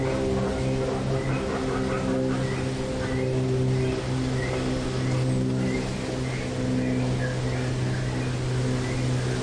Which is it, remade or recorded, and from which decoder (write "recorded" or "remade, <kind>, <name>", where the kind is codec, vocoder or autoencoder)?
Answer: recorded